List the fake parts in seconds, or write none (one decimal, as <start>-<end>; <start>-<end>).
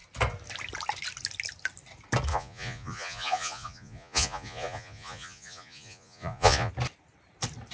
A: 2.3-6.7